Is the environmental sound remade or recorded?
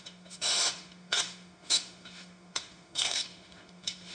remade